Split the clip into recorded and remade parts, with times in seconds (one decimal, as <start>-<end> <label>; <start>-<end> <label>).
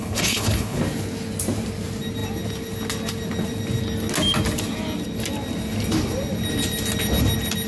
0.0-0.8 remade; 0.8-7.7 recorded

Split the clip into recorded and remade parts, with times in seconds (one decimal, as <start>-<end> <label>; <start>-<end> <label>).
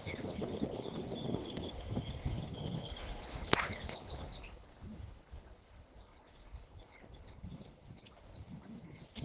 0.0-9.2 remade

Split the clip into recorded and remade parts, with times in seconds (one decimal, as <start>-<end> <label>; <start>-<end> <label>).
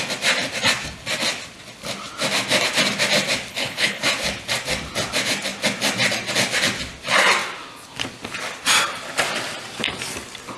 0.0-3.5 recorded; 3.5-4.0 remade; 4.0-10.6 recorded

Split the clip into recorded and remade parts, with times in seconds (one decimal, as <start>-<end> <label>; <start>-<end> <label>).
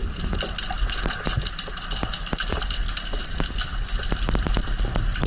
0.0-5.3 recorded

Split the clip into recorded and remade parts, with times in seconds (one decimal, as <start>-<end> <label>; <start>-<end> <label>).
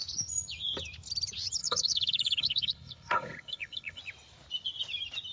0.0-1.6 recorded; 1.6-4.0 remade; 4.0-5.3 recorded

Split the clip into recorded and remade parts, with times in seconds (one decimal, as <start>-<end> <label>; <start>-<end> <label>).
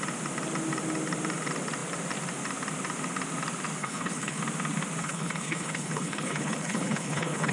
0.0-3.8 recorded; 3.8-4.4 remade; 4.4-5.0 recorded; 5.0-7.5 remade